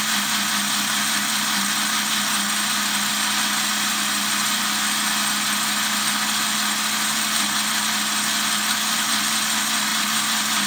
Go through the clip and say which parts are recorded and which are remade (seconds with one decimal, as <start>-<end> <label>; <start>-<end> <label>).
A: 0.0-10.7 recorded